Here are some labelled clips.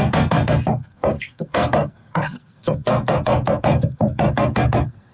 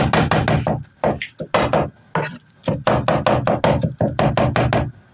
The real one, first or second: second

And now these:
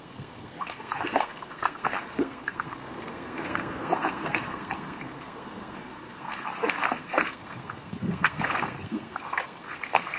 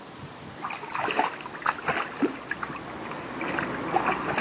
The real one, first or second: second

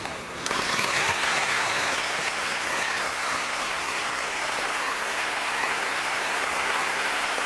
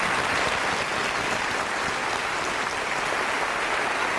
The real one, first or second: second